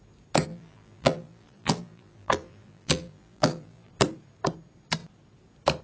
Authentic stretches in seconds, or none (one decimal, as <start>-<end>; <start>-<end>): 0.0-0.5; 3.9-5.8